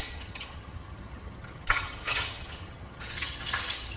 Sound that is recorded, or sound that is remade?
remade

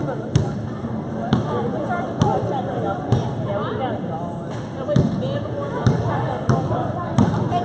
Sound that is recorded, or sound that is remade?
recorded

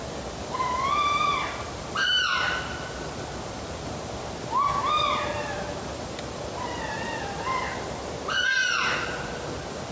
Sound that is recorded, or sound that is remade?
recorded